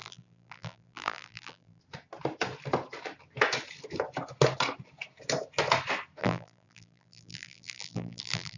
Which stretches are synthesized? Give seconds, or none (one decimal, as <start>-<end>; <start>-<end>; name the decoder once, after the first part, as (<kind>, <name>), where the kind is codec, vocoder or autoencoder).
0.0-1.8 (vocoder, BigVGAN v2); 6.2-8.6